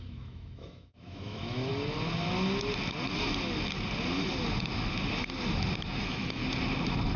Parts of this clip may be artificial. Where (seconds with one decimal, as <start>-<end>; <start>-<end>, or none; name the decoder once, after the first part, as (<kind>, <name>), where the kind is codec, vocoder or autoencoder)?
0.0-1.7 (autoencoder, DAC-VAE); 6.0-6.4